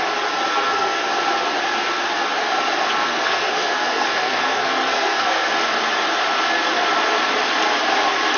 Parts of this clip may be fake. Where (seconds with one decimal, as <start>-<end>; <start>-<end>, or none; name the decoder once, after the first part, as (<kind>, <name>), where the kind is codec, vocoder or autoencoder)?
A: 0.5-1.1 (codec, SNAC); 3.0-5.5